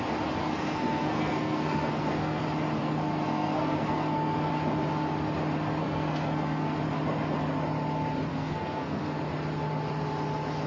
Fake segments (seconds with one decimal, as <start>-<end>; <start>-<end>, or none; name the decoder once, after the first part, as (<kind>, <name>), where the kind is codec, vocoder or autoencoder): 0.4-2.4 (codec, SNAC); 2.8-4.5; 5.8-6.8; 8.3-9.2

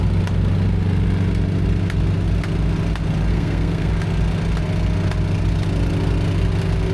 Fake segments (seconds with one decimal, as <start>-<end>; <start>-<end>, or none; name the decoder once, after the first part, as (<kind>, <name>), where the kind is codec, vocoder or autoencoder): 3.3-3.9 (codec, SNAC)

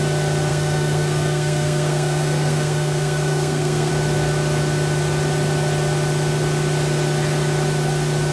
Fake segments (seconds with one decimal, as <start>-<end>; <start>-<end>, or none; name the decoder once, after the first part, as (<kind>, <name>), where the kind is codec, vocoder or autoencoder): 0.5-3.9 (codec, SNAC)

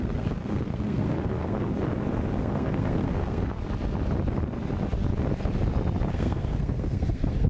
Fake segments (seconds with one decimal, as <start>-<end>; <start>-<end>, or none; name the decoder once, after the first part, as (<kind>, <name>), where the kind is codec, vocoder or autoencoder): 0.0-1.7 (codec, SNAC); 2.4-3.6; 6.1-7.5

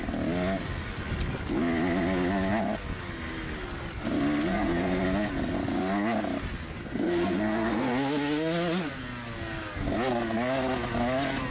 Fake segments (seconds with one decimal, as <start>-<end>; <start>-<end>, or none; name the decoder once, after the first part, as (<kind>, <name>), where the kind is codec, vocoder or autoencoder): 4.5-5.0 (codec, SNAC); 6.8-7.9

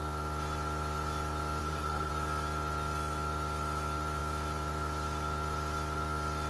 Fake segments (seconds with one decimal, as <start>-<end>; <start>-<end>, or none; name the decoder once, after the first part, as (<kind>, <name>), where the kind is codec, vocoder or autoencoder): 1.6-2.1 (codec, SNAC)